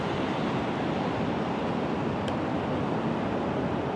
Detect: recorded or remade recorded